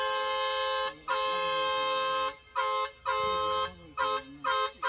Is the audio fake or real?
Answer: real